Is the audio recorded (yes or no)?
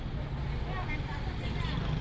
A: yes